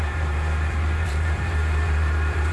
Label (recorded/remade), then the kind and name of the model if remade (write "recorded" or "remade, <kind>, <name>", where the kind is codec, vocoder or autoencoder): remade, vocoder, BigVGAN v2